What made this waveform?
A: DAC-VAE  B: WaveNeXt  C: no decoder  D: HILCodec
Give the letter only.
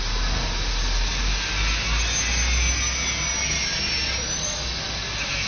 C